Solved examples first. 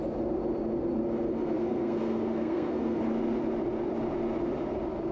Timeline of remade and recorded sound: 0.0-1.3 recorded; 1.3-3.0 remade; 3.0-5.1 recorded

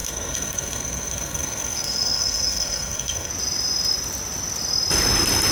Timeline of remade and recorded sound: 0.0-3.3 remade; 3.3-5.5 recorded

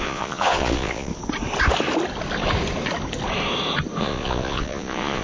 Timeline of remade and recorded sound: 0.0-1.1 remade; 1.1-4.0 recorded; 4.0-5.2 remade

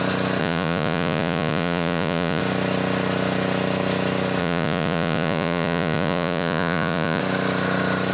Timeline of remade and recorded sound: 0.0-0.4 recorded; 0.4-2.4 remade; 2.4-4.4 recorded; 4.4-7.2 remade; 7.2-8.1 recorded

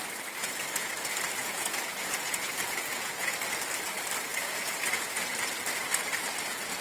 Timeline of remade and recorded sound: 0.0-0.4 recorded; 0.4-0.9 remade; 0.9-1.4 recorded; 1.4-3.3 remade; 3.3-4.3 recorded; 4.3-5.3 remade; 5.3-6.8 recorded

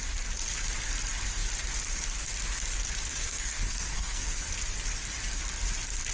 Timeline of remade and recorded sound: 0.0-3.1 recorded; 3.1-4.5 remade; 4.5-6.1 recorded

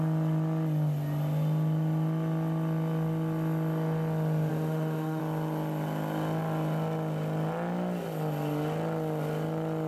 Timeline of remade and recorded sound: 0.0-4.5 recorded; 4.5-5.2 remade; 5.2-9.9 recorded